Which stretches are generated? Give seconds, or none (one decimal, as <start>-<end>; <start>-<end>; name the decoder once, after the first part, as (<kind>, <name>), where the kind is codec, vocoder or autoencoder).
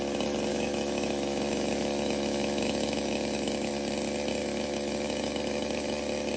0.5-3.7 (autoencoder, DAC-VAE); 4.4-6.0